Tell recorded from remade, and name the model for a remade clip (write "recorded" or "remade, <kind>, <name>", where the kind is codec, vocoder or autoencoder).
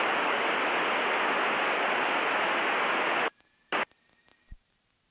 recorded